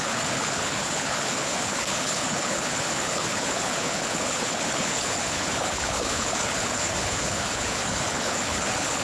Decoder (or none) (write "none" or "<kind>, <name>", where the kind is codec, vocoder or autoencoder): codec, HILCodec